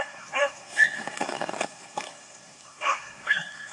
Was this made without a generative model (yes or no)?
no